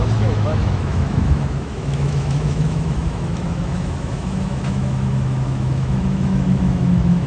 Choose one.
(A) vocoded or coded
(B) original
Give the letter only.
A